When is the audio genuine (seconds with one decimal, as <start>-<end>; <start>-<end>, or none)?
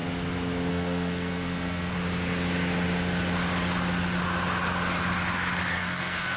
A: 0.0-0.7; 1.9-5.7